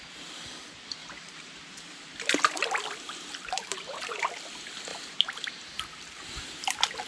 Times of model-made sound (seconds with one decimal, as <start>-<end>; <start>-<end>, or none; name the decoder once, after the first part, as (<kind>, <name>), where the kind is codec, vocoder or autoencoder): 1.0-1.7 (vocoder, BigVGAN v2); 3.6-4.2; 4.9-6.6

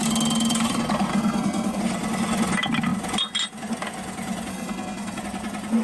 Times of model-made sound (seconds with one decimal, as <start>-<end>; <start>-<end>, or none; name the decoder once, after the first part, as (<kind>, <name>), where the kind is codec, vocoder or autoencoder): 1.1-1.8 (codec, SNAC); 4.5-5.2

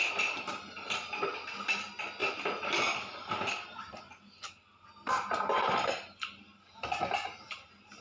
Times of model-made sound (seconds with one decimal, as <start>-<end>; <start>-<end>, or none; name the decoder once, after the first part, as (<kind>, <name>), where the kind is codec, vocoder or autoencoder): none

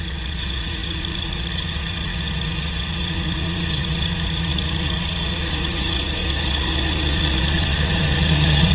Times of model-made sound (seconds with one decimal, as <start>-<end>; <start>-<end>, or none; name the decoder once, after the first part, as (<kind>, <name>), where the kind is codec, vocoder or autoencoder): 0.0-8.7 (vocoder, Vocos)

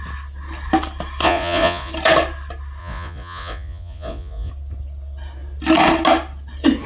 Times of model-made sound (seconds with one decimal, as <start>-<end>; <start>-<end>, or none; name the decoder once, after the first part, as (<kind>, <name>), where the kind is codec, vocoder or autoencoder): 1.2-1.9 (vocoder, Vocos); 2.8-4.5

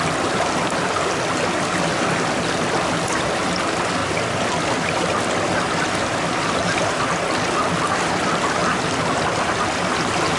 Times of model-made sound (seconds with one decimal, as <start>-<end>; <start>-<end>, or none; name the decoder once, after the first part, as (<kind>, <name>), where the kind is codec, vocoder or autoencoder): 0.0-8.6 (vocoder, BigVGAN v2); 9.5-10.4

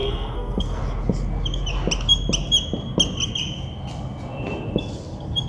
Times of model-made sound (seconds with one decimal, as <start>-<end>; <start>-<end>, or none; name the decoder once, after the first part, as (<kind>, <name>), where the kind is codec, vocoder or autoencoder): 0.0-0.8 (codec, SNAC)

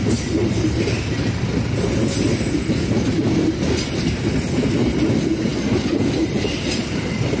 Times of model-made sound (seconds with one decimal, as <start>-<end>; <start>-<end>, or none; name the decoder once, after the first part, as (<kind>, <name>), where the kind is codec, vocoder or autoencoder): none